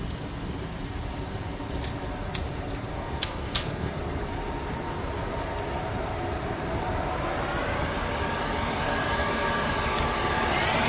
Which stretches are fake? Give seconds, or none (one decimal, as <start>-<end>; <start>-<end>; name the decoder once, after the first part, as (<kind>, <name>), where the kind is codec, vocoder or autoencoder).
2.9-3.9 (codec, SNAC)